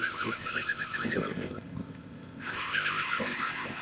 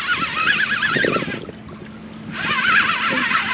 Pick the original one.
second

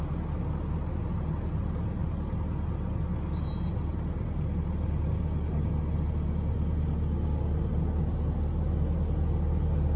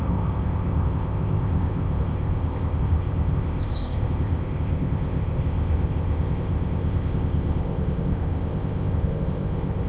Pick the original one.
first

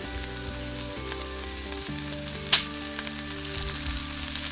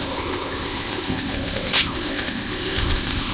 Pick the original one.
first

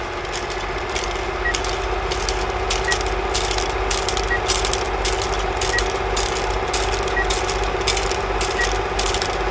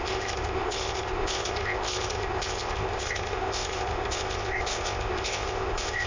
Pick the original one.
first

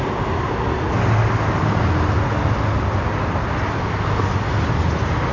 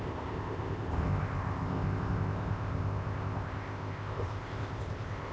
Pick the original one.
first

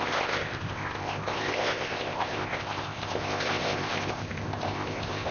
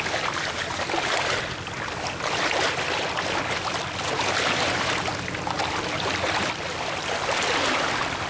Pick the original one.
second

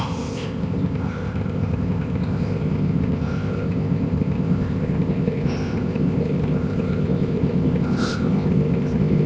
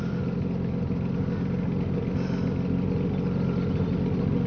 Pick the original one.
second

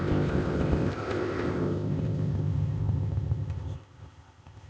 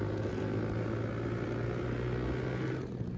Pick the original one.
second